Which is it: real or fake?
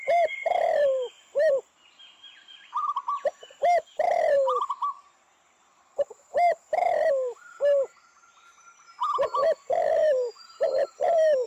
fake